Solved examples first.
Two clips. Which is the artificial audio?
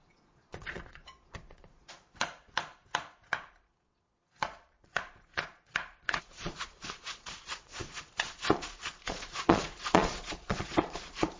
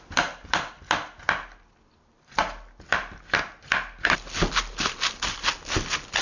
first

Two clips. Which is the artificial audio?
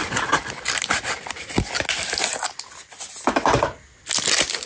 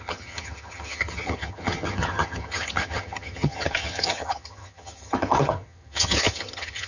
second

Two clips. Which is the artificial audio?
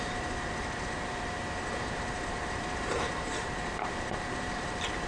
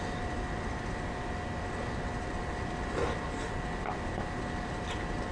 first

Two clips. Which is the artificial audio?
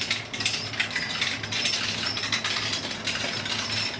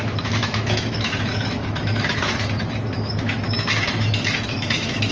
second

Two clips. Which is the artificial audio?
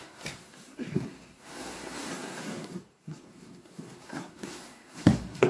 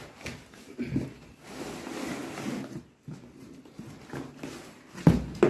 first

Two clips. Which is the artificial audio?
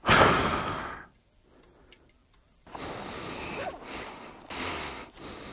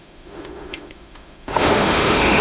second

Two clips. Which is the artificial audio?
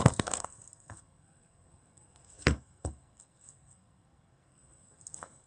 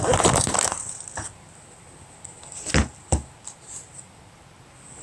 first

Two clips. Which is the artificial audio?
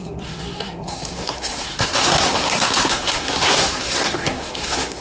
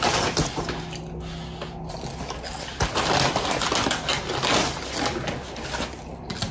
first